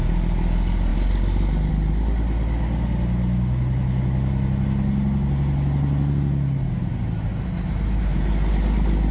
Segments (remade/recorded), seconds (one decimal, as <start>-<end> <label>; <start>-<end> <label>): 0.0-9.1 recorded